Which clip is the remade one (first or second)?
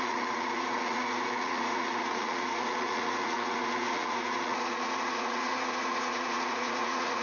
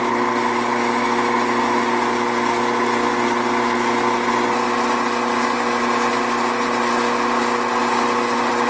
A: first